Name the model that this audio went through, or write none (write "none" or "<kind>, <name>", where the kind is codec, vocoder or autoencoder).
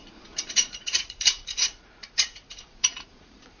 vocoder, Vocos